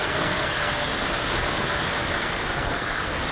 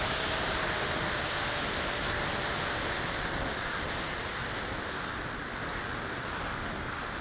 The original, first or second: second